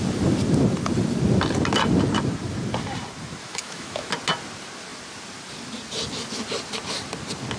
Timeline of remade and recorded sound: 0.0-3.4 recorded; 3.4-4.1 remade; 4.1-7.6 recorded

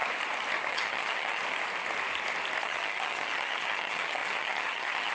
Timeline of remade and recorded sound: 0.0-0.7 recorded; 0.7-1.4 remade; 1.4-2.6 recorded; 2.6-5.1 remade

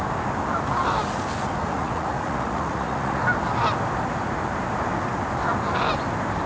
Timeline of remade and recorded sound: 0.0-1.6 recorded; 1.6-3.2 remade; 3.2-6.5 recorded

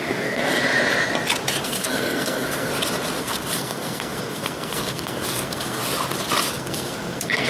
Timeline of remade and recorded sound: 0.0-0.4 remade; 0.4-1.6 recorded; 1.6-2.7 remade; 2.7-3.2 recorded; 3.2-5.8 remade; 5.8-6.5 recorded; 6.5-7.5 remade

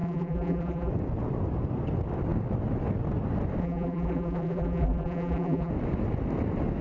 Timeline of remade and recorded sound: 0.0-0.9 remade; 0.9-3.6 recorded; 3.6-5.7 remade; 5.7-6.8 recorded

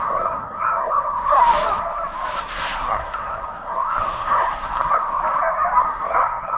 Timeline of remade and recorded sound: 0.0-1.4 remade; 1.4-2.4 recorded; 2.4-5.2 remade; 5.2-5.8 recorded; 5.8-6.6 remade

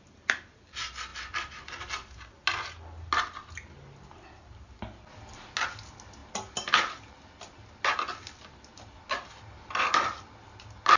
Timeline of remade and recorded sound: 0.0-11.0 recorded

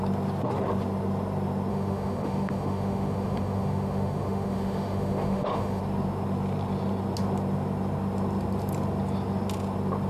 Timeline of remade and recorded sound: 0.0-1.7 recorded; 1.7-5.8 remade; 5.8-10.1 recorded